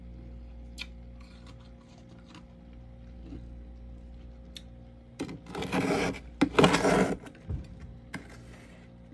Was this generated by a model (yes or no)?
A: no